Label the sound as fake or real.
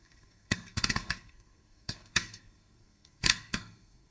fake